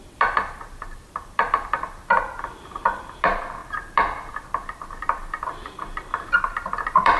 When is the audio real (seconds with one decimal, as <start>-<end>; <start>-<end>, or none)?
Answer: none